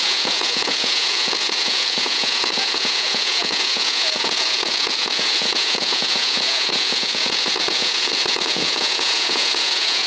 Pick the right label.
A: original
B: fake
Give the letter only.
B